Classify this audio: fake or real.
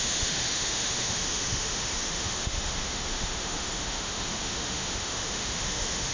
fake